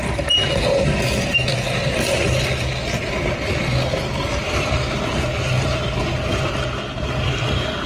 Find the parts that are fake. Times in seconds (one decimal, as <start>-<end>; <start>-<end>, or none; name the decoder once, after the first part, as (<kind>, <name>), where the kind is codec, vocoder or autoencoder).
none